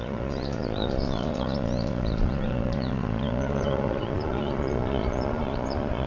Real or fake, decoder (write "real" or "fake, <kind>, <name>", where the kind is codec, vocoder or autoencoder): fake, vocoder, Vocos